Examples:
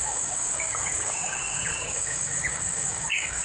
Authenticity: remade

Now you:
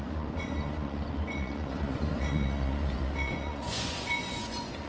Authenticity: remade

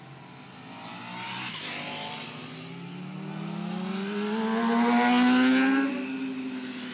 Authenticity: recorded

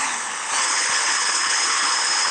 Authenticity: remade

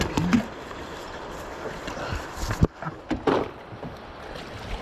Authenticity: recorded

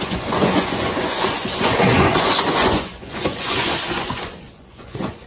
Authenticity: remade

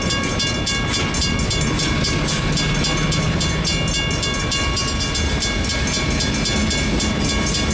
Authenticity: recorded